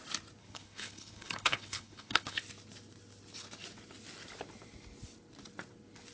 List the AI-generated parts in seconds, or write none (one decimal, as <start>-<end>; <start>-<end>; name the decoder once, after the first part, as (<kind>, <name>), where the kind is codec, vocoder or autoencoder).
0.4-2.4 (codec, HILCodec)